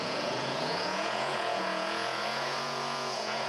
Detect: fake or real fake